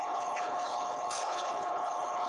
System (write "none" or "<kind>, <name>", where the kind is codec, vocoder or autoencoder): codec, HILCodec